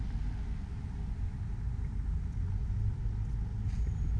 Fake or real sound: real